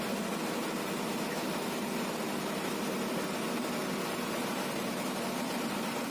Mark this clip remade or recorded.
recorded